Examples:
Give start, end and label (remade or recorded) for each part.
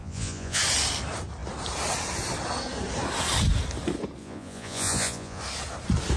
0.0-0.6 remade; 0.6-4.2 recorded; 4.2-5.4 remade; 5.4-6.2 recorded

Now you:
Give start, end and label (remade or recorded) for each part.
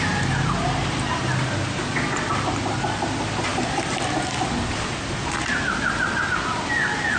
0.0-7.2 recorded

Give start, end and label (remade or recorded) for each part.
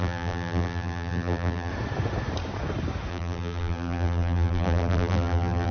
0.0-1.7 remade; 1.7-3.1 recorded; 3.1-5.7 remade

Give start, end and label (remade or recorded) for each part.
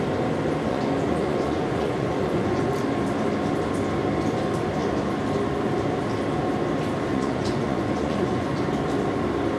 0.0-0.7 recorded; 0.7-2.6 remade; 2.6-7.1 recorded; 7.1-8.6 remade; 8.6-9.6 recorded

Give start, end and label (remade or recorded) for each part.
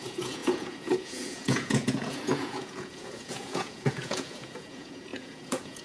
0.0-5.8 remade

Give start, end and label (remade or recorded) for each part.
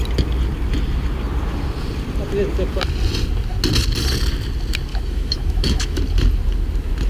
0.0-4.9 recorded; 4.9-6.0 remade; 6.0-7.1 recorded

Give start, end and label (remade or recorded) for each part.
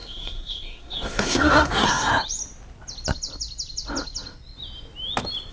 0.0-2.1 remade; 2.1-5.5 recorded